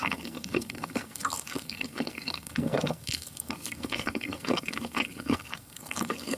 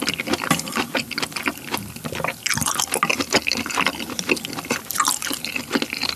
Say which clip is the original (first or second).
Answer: second